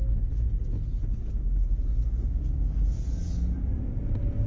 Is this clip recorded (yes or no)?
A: yes